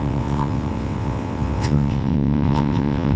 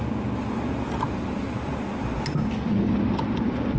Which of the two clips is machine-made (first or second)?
first